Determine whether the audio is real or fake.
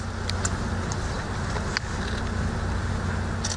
real